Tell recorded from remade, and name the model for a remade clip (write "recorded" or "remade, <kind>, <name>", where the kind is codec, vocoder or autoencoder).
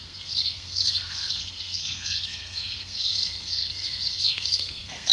remade, codec, SNAC